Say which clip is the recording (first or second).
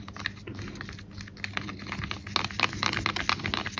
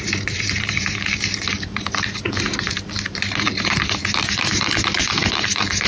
first